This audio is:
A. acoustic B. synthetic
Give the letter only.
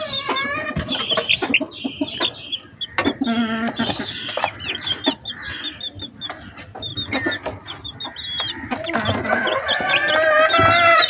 A